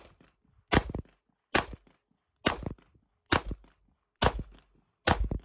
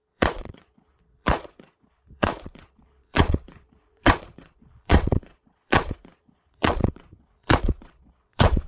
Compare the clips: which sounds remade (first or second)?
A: second